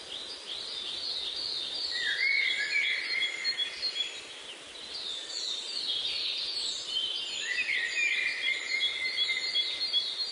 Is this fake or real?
real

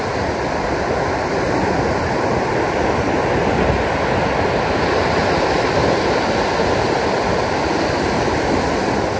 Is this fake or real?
real